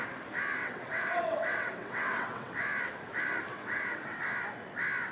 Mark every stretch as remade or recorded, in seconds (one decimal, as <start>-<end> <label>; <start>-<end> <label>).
0.0-0.6 recorded; 0.6-2.5 remade; 2.5-3.5 recorded; 3.5-4.2 remade; 4.2-5.1 recorded